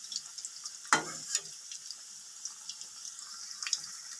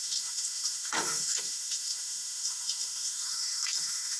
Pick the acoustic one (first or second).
first